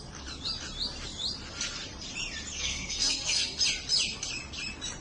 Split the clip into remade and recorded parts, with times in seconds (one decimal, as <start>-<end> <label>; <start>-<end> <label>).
0.0-2.5 recorded; 2.5-3.6 remade; 3.6-5.0 recorded